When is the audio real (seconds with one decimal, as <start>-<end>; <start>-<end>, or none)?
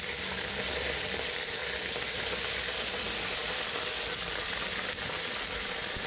0.0-6.1